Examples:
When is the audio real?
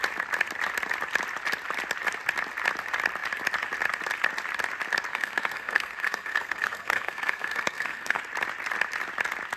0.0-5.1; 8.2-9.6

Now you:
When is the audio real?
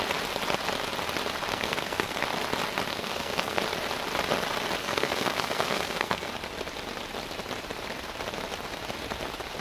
0.0-1.5; 2.2-2.9; 3.6-4.8; 6.3-9.6